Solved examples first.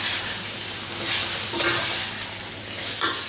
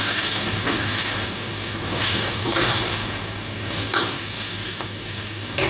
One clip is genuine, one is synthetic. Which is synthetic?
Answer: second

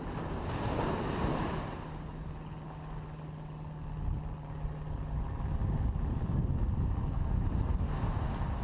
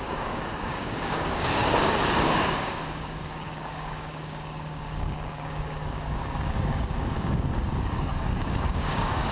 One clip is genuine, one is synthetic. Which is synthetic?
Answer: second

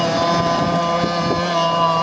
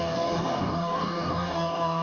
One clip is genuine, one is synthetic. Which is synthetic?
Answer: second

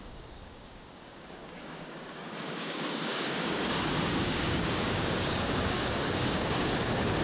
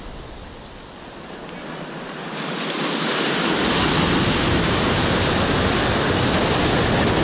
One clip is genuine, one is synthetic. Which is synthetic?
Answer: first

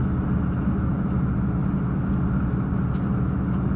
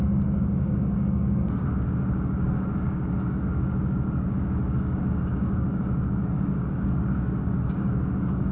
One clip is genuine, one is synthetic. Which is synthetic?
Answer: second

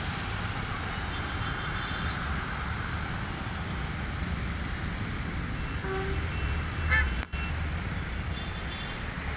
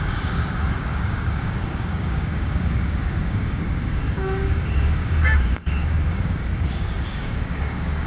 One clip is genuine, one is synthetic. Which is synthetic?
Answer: second